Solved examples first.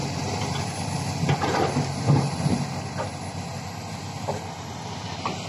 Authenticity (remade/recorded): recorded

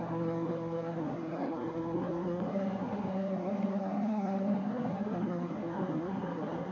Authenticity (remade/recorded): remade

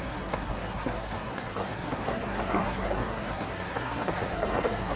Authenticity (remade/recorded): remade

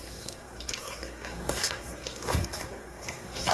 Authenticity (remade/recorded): remade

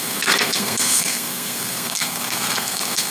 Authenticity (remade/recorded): remade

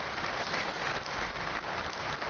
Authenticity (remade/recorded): recorded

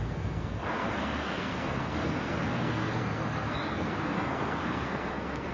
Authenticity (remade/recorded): remade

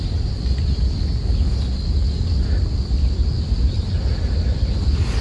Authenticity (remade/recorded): recorded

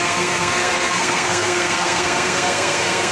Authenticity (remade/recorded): remade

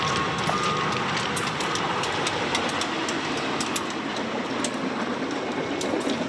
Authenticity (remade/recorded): recorded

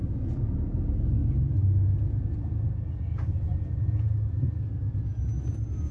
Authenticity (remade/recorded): recorded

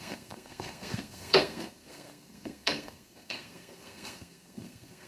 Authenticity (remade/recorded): remade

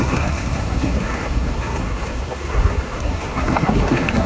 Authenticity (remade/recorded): remade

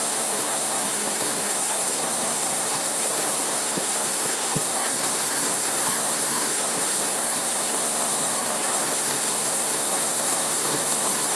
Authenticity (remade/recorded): remade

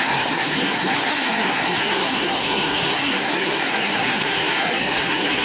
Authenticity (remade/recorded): remade